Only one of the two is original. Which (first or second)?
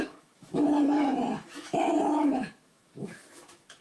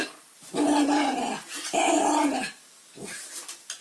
second